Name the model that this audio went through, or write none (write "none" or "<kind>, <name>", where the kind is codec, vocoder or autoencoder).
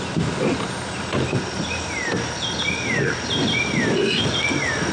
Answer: none